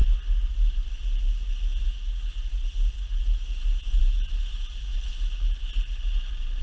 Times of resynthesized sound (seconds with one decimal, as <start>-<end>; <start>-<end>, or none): none